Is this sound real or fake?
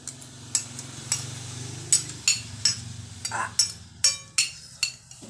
real